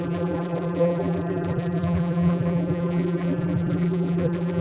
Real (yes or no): no